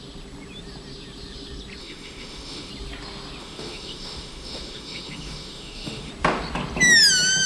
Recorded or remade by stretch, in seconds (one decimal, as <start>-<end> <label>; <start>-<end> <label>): 0.0-1.8 recorded; 1.8-2.7 remade; 2.7-3.4 recorded; 3.4-6.1 remade; 6.1-7.5 recorded